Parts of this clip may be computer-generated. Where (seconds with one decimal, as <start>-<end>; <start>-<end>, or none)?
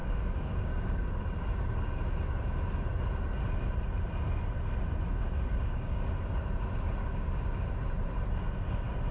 0.0-1.2; 5.5-6.1; 7.0-7.7